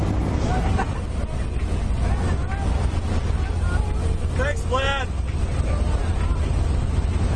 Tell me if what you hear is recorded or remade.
recorded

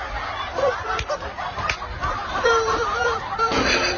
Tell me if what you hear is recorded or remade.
remade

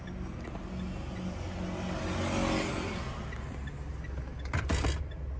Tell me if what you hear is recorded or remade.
recorded